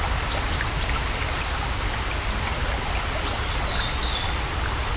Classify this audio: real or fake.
real